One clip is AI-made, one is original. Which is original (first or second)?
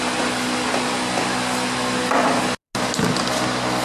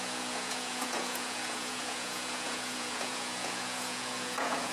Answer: first